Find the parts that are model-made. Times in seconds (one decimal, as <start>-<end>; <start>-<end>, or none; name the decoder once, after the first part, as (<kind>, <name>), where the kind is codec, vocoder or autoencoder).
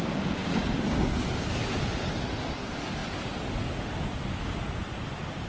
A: 3.0-4.7 (vocoder, BigVGAN v2)